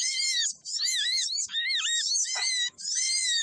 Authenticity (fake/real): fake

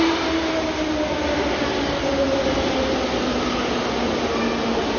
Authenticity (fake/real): real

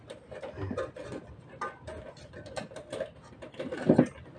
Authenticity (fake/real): real